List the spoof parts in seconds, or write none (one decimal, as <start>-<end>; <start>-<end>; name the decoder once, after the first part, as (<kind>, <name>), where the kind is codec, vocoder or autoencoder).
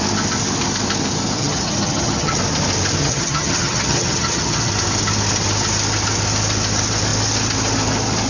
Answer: 1.4-2.4 (vocoder, HiFi-GAN); 3.0-4.7